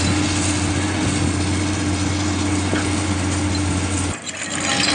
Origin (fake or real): real